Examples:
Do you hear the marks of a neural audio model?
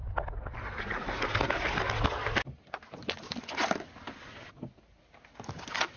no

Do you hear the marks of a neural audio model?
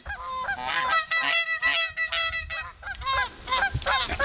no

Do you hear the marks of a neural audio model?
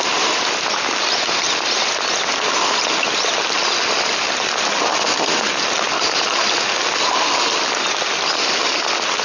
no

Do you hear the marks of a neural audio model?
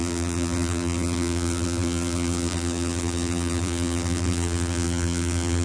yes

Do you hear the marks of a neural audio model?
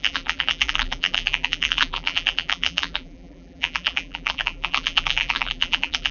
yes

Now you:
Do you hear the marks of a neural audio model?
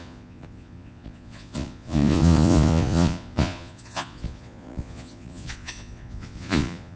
yes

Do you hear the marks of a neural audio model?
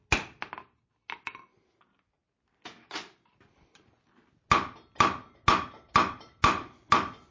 no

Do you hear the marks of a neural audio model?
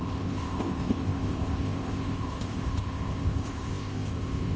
yes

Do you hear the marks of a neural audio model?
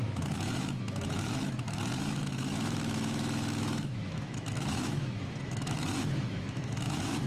yes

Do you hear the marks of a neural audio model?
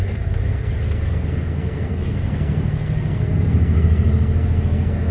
yes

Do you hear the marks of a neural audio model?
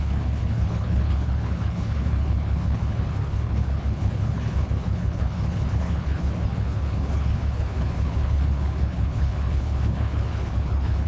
yes